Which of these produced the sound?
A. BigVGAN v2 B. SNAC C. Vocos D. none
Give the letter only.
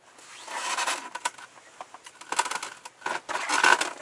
D